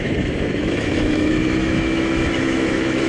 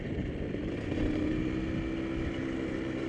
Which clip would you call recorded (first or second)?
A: second